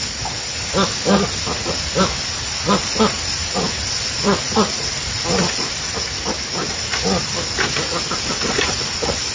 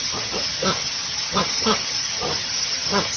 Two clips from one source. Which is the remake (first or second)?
second